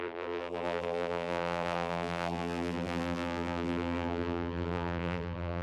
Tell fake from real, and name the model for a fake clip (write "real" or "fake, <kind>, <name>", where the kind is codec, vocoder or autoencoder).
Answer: fake, vocoder, BigVGAN v2